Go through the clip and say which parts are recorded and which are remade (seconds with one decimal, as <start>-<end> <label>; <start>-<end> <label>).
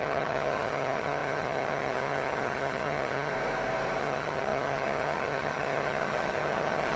0.0-3.3 remade; 3.3-4.0 recorded; 4.0-7.0 remade